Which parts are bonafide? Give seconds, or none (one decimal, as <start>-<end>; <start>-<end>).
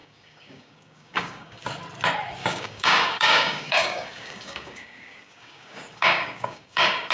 1.6-2.4